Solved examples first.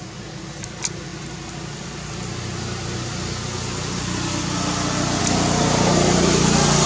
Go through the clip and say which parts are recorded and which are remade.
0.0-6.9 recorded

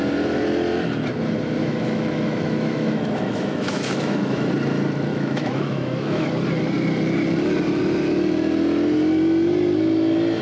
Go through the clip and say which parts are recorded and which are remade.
0.0-1.6 recorded; 1.6-4.5 remade; 4.5-5.1 recorded; 5.1-6.3 remade; 6.3-10.4 recorded

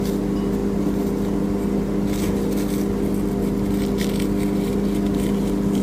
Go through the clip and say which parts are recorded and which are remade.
0.0-5.8 recorded

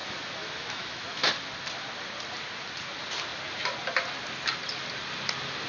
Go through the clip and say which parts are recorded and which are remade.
0.0-1.3 remade; 1.3-5.7 recorded